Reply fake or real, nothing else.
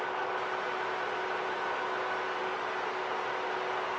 real